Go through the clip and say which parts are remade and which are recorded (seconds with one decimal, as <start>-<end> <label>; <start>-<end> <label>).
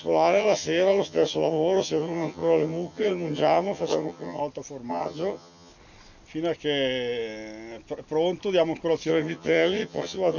0.0-4.4 remade; 4.4-4.9 recorded; 4.9-5.7 remade; 5.7-9.1 recorded; 9.1-10.4 remade